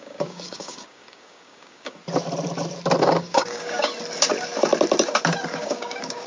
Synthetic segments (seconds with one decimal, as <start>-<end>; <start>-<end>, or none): 0.0-2.0; 3.0-3.9; 5.5-6.3